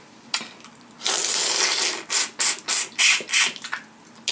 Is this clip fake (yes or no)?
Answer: no